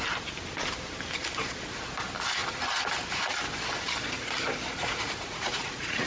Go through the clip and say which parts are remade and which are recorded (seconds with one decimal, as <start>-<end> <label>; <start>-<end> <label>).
0.0-4.8 recorded; 4.8-6.1 remade